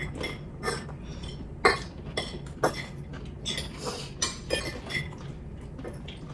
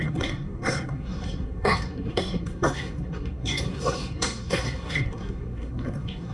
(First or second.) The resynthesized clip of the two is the second